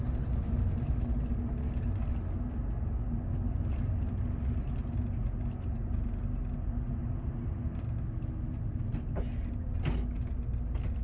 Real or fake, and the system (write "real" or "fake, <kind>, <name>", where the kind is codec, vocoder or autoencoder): real